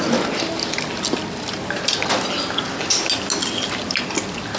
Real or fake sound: real